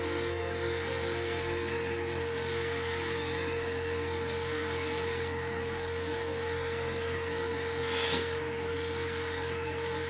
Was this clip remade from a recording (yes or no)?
yes